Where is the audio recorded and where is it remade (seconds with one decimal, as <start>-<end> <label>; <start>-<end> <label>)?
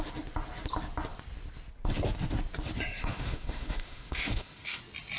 0.0-3.0 recorded; 3.0-4.8 remade; 4.8-5.2 recorded